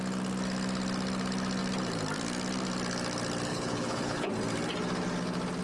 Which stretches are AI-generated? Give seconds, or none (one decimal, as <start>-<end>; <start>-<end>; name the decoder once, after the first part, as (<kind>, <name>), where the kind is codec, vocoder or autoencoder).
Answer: 3.5-4.3 (codec, HILCodec)